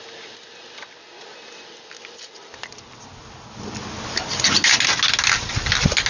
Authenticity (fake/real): real